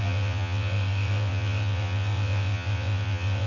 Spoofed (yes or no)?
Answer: yes